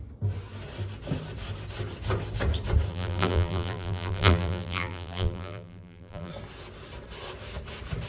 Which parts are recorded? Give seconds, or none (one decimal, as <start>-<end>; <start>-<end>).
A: 0.0-2.9; 6.3-8.1